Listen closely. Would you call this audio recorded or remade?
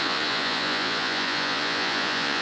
remade